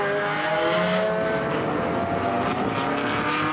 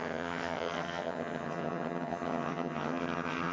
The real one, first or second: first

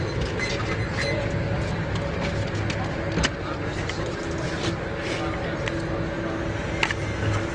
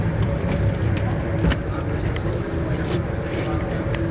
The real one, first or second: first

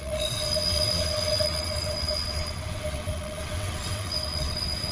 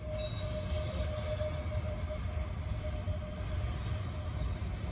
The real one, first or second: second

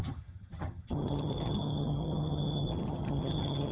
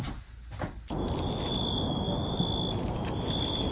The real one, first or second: second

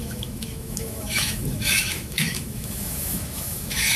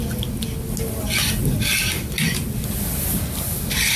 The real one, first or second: second